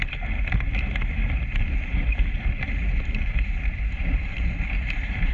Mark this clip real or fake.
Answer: fake